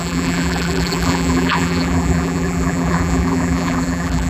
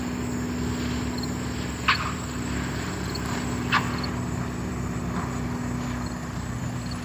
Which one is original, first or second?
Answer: second